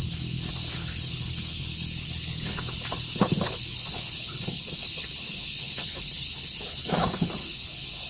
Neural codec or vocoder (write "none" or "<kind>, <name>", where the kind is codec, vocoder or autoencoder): codec, HILCodec